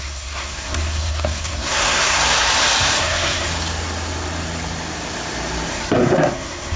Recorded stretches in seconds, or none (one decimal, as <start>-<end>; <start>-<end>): 2.2-3.0; 3.5-5.7